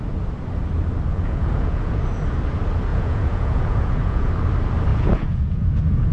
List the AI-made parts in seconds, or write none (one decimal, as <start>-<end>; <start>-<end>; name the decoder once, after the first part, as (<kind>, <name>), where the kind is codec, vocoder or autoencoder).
1.1-2.0 (vocoder, Vocos); 2.9-4.3; 4.9-6.1